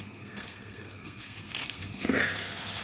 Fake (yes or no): yes